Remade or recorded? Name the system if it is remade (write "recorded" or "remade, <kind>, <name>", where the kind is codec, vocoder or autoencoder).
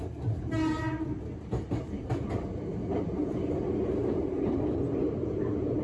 recorded